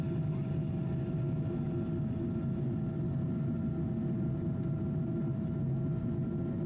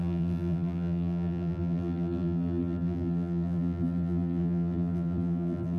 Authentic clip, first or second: first